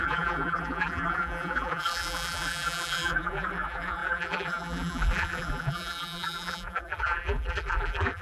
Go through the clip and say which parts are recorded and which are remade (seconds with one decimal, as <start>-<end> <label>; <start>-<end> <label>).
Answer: 0.0-8.2 remade